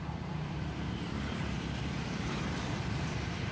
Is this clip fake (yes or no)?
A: yes